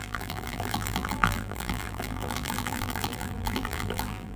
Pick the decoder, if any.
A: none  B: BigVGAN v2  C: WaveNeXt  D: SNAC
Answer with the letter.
B